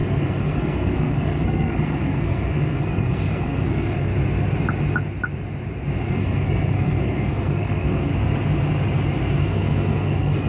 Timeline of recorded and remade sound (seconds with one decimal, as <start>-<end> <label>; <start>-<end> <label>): 0.0-4.1 remade; 4.1-6.0 recorded; 6.0-8.1 remade; 8.1-9.4 recorded; 9.4-10.5 remade